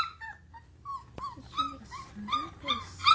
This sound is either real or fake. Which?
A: real